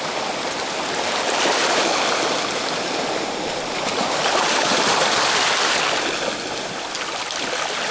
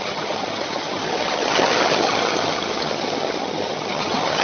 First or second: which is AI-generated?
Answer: second